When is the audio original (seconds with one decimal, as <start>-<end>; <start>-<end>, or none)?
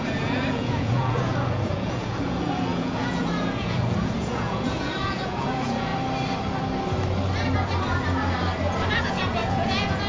5.9-9.0